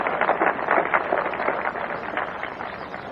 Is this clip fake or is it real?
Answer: real